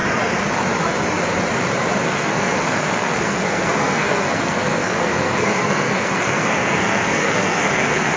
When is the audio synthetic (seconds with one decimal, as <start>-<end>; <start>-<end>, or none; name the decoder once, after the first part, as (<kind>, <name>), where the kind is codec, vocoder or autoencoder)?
2.0-8.2 (codec, SNAC)